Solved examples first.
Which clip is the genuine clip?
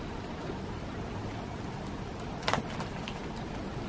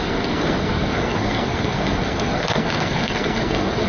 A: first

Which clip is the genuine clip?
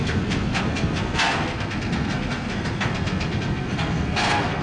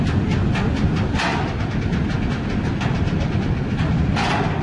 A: second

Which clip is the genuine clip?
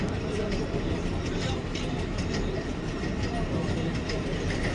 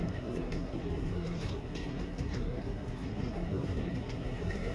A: first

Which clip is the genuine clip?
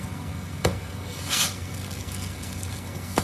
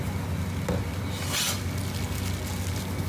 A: second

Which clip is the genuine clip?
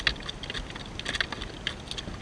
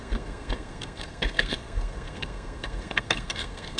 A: first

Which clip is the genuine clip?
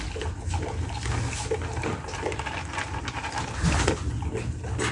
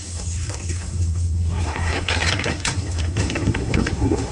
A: first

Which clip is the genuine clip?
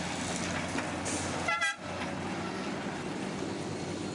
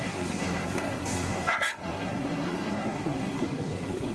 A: first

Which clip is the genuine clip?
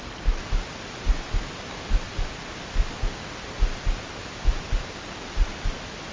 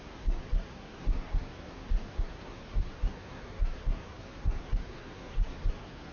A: first